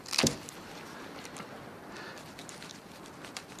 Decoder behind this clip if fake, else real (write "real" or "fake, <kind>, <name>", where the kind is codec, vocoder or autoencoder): real